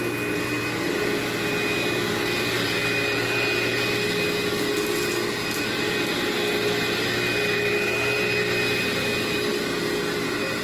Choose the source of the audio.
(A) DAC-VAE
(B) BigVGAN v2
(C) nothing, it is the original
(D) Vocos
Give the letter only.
C